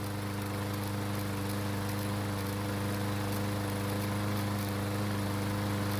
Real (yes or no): yes